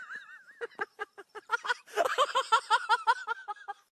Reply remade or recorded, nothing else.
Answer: remade